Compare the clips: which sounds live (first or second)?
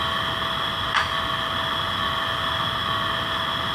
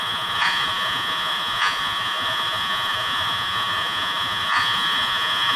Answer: first